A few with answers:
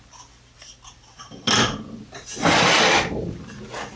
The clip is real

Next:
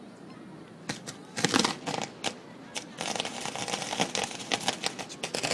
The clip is real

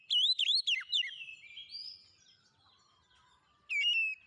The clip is real